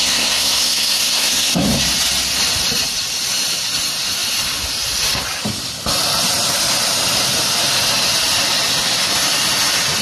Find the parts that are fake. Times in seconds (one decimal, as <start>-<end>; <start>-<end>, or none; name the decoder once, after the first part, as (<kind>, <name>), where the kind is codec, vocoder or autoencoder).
0.0-1.8 (codec, SNAC)